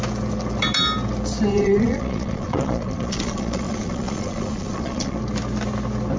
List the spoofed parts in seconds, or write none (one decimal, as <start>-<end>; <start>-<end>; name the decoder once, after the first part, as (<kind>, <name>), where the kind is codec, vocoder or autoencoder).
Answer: 1.5-5.2 (vocoder, Vocos)